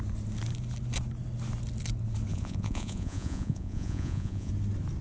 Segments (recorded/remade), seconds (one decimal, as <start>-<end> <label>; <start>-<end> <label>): 0.0-2.3 recorded; 2.3-4.5 remade; 4.5-5.0 recorded